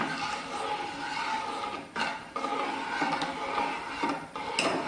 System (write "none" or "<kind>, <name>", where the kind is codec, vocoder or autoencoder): none